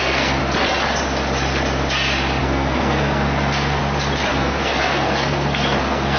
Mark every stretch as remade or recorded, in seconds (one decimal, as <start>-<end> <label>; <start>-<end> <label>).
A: 0.0-0.4 remade; 0.4-2.4 recorded; 2.4-3.8 remade; 3.8-4.3 recorded; 4.3-6.2 remade